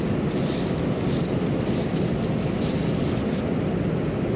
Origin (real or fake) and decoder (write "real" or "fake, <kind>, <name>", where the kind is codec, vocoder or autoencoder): real